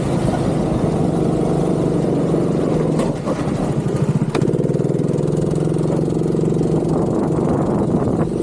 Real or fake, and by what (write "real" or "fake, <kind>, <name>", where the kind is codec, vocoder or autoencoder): real